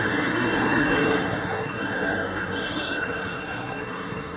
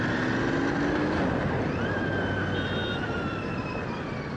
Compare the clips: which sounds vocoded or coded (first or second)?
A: first